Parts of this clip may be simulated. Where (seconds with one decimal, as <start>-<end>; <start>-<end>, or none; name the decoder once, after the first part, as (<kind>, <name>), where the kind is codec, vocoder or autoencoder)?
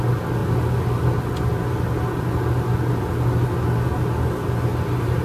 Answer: none